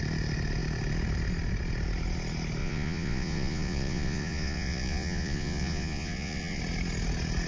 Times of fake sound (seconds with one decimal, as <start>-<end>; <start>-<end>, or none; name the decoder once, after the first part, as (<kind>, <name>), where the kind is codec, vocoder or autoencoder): 2.6-6.6 (vocoder, Vocos)

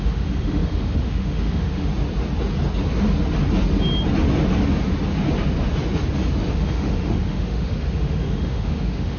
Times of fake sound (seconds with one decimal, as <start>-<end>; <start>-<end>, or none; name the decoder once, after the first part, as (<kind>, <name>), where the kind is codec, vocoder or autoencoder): 0.0-1.9 (autoencoder, DAC-VAE); 6.5-9.2

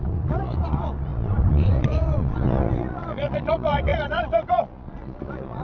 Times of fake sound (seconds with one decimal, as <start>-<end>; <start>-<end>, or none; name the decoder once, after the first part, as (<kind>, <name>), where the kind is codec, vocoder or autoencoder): 0.0-5.6 (vocoder, Vocos)

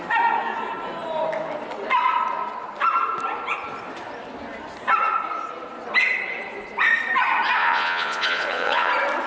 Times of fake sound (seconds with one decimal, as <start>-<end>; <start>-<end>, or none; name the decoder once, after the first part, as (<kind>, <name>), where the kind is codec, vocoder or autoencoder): 7.6-8.9 (vocoder, Vocos)

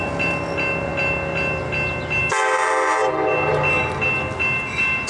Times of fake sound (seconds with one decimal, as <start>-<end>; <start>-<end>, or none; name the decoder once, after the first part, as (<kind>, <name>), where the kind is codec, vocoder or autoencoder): none